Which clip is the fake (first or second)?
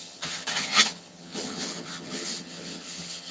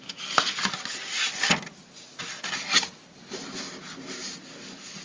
first